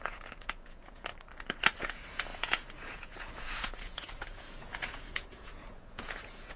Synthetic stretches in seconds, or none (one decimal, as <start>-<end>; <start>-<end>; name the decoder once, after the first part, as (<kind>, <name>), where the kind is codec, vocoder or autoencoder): 0.0-1.1 (vocoder, Vocos); 1.8-6.6